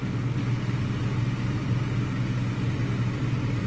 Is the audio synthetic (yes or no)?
no